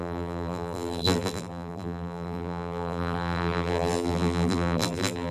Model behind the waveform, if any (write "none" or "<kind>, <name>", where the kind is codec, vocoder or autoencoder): vocoder, BigVGAN v2